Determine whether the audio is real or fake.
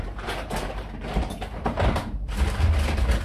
fake